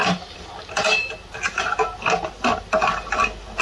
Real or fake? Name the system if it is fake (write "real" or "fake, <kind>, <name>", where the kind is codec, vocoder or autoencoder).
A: real